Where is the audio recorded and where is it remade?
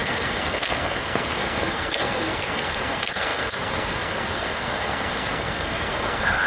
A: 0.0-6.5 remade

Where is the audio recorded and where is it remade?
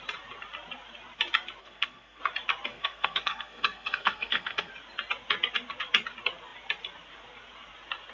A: 0.0-1.6 recorded; 1.6-2.2 remade; 2.2-2.7 recorded; 2.7-4.7 remade; 4.7-8.1 recorded